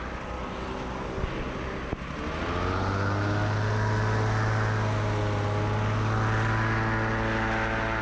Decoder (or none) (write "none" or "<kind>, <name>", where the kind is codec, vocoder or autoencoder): none